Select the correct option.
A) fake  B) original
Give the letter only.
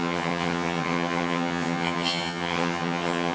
A